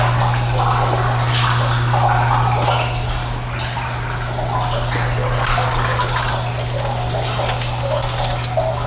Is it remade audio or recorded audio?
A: recorded